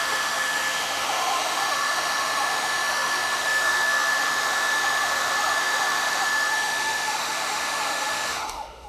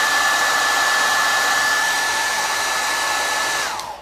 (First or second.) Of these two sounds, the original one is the second